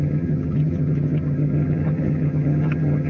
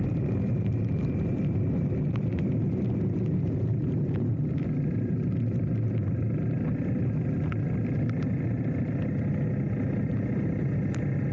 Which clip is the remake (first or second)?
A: first